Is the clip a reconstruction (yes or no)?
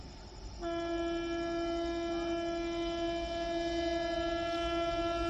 no